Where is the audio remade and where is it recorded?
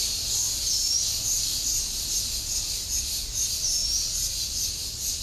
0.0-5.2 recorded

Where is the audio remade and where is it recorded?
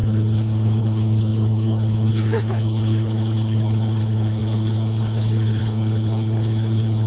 0.0-7.1 remade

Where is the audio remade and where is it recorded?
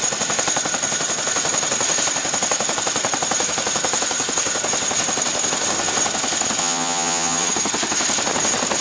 0.0-6.6 recorded; 6.6-7.5 remade; 7.5-8.8 recorded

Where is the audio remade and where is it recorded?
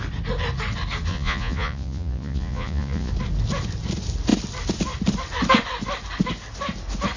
0.0-1.1 recorded; 1.1-3.1 remade; 3.1-7.2 recorded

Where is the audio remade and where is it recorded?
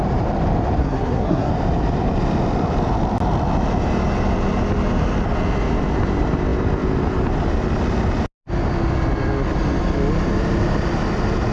0.0-0.8 recorded; 0.8-1.5 remade; 1.5-11.5 recorded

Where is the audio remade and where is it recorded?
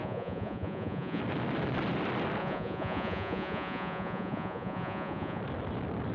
0.0-1.2 remade; 1.2-2.4 recorded; 2.4-5.4 remade; 5.4-6.1 recorded